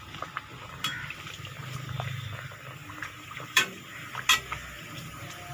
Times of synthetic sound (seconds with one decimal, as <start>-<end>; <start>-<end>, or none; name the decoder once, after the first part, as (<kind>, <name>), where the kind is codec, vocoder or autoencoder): 2.8-3.8 (vocoder, BigVGAN v2)